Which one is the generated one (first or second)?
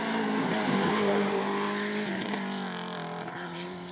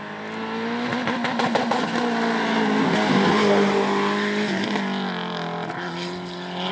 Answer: first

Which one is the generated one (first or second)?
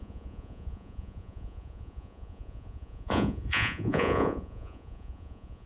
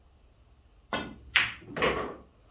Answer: first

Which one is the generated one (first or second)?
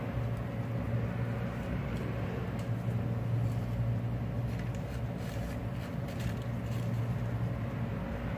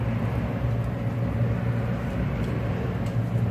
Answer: second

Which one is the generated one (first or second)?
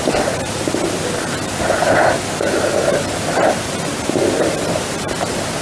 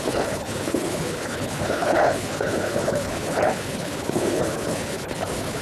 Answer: second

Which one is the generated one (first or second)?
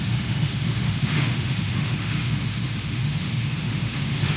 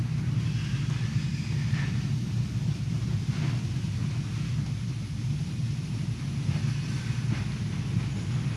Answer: first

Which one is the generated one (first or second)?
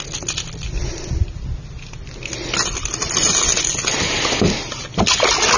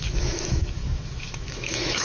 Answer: second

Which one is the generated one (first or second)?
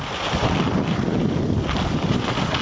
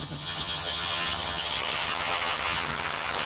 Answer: second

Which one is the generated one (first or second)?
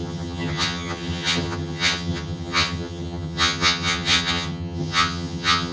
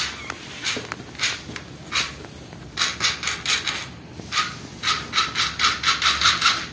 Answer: first